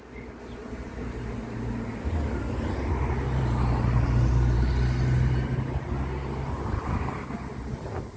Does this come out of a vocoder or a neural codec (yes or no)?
no